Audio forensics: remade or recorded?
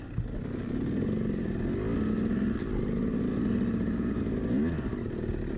recorded